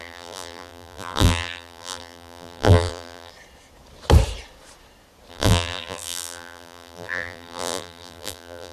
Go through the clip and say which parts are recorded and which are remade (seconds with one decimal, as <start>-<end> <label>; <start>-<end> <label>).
0.0-3.3 remade; 3.3-5.3 recorded; 5.3-8.7 remade